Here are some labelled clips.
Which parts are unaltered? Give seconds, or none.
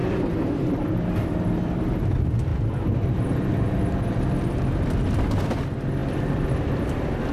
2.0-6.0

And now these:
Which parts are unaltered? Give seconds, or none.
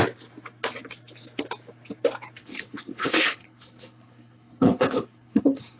0.0-2.4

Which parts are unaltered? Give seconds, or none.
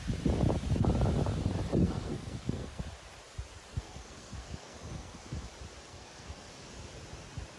0.0-1.8; 2.8-3.7; 5.5-5.9; 6.5-7.6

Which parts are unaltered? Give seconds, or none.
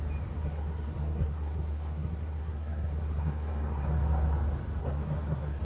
0.0-0.4; 3.8-4.8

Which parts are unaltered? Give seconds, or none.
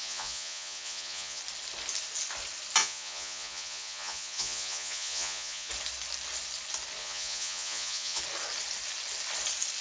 1.4-2.8; 5.7-7.0; 8.2-9.8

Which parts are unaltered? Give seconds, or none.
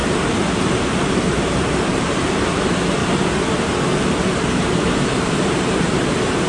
3.0-4.1